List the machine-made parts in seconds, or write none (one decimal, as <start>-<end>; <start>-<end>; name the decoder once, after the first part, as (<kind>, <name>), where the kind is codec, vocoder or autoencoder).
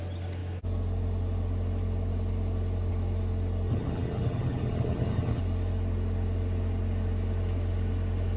3.7-5.4 (vocoder, HiFi-GAN)